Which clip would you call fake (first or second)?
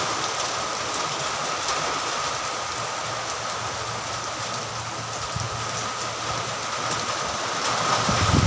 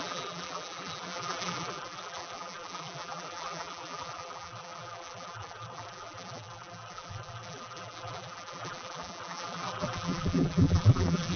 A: second